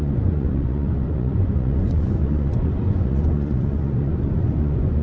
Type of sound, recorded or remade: remade